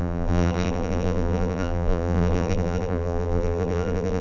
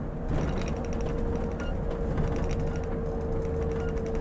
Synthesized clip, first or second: first